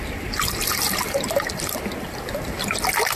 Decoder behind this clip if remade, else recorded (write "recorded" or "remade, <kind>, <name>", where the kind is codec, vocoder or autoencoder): remade, vocoder, BigVGAN v2